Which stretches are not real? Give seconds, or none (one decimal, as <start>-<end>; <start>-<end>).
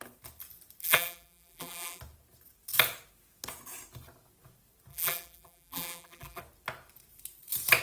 0.8-2.0; 4.9-6.4